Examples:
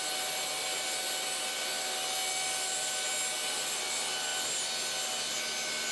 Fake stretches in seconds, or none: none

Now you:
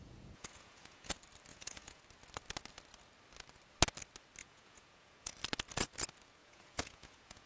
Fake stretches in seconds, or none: 0.0-1.1 (vocoder, Vocos); 1.5-2.0; 4.4-5.3; 6.4-7.5

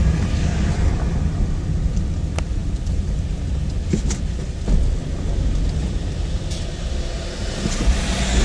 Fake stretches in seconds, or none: none

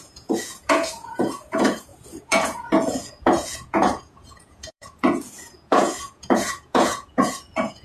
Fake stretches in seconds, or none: 0.0-7.8 (vocoder, Vocos)

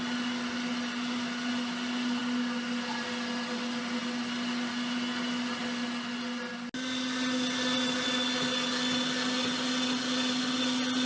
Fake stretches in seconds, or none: none

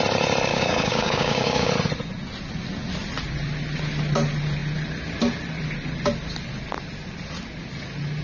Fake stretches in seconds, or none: 0.5-1.7 (codec, DAC)

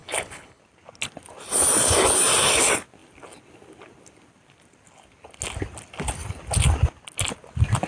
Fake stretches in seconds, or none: 0.0-0.6 (codec, HILCodec)

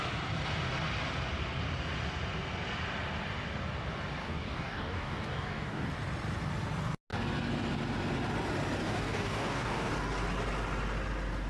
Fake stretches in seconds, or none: 4.2-5.9 (codec, DAC); 8.8-9.9